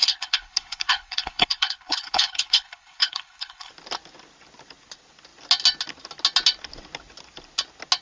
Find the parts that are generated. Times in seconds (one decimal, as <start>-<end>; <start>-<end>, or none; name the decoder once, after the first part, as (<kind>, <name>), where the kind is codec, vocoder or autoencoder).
0.0-3.7 (codec, HILCodec)